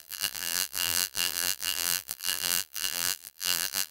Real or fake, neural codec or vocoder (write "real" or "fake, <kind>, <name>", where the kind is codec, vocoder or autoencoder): fake, vocoder, BigVGAN v2